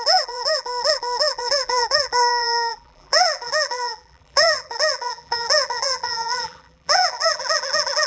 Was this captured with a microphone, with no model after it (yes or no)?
no